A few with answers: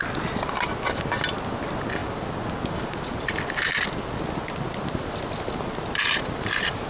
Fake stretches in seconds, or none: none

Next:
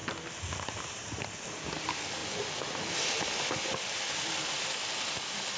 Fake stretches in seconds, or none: 0.8-2.2 (vocoder, BigVGAN v2); 3.2-5.6

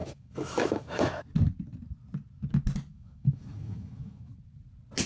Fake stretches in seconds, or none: 0.0-1.2 (autoencoder, DAC-VAE); 2.9-4.3

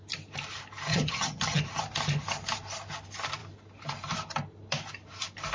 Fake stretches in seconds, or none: 0.9-1.6 (vocoder, HiFi-GAN)

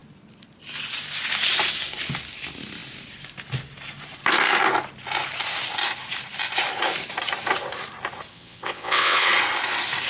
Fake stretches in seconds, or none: 8.3-9.3 (vocoder, WaveNeXt)

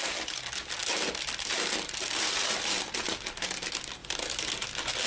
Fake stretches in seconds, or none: 0.8-2.8 (vocoder, BigVGAN v2); 4.0-4.5